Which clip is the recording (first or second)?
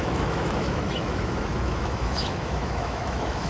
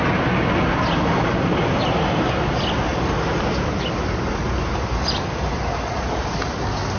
second